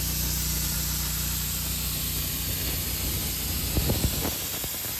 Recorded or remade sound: recorded